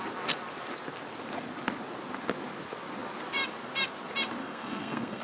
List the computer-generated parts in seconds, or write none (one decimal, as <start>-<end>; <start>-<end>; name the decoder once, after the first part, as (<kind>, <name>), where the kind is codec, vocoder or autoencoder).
4.4-5.2 (codec, SNAC)